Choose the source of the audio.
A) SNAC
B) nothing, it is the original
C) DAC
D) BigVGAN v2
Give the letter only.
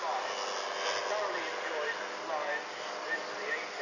B